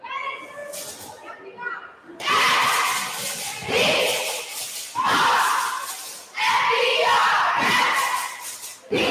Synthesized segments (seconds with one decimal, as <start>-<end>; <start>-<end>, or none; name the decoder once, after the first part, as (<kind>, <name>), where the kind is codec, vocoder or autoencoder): none